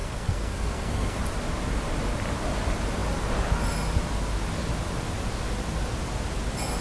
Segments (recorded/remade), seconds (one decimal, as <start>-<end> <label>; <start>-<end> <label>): 0.0-1.2 remade; 1.2-6.8 recorded